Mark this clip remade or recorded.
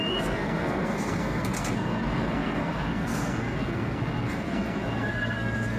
remade